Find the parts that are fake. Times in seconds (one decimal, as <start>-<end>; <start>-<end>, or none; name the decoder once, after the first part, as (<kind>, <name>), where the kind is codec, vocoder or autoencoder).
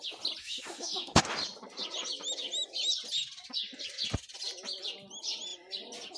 0.4-1.2 (autoencoder, DAC-VAE)